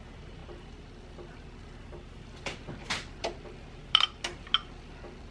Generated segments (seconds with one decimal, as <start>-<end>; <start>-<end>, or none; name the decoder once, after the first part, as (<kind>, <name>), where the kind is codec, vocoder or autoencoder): 2.8-3.3 (vocoder, BigVGAN v2)